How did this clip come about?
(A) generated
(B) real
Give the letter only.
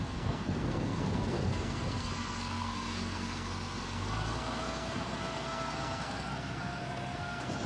A